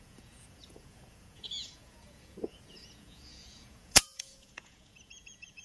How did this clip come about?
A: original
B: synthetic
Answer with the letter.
B